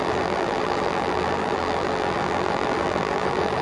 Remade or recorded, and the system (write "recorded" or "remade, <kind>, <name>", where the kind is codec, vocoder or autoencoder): remade, vocoder, BigVGAN v2